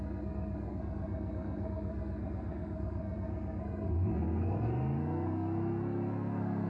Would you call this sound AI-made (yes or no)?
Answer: yes